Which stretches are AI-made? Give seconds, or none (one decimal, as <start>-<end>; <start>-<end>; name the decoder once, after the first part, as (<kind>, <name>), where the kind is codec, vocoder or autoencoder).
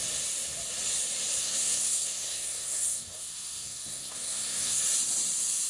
1.4-4.8 (codec, SNAC)